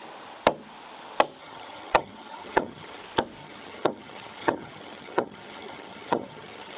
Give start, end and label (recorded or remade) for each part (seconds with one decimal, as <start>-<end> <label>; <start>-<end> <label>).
0.0-1.4 recorded; 1.4-3.0 remade; 3.0-3.4 recorded; 3.4-6.8 remade